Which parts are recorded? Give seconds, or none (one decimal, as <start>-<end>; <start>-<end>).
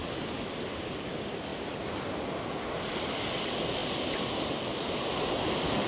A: 0.0-5.9